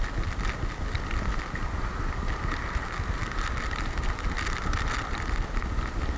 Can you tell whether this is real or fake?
real